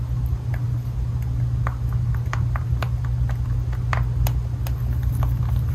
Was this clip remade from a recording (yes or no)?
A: no